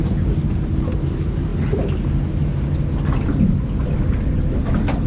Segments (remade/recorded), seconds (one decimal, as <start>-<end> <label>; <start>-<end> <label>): 0.0-5.1 recorded